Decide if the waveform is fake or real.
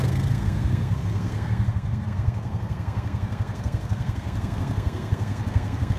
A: fake